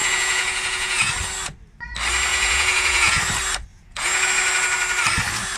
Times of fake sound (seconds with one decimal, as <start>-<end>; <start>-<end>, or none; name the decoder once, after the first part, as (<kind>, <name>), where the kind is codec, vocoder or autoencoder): 0.0-1.1 (vocoder, Vocos); 2.3-3.2; 3.7-4.3